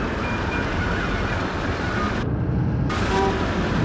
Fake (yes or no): no